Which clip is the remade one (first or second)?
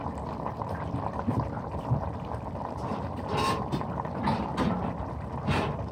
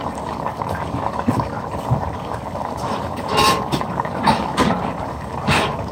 second